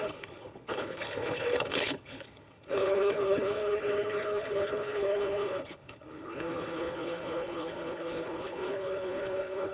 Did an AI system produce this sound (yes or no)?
yes